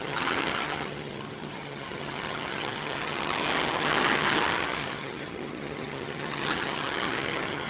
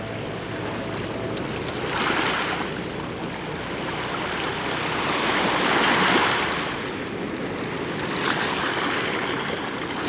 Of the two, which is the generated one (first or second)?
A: first